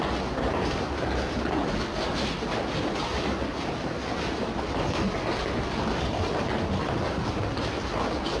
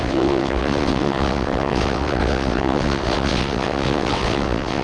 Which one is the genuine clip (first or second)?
first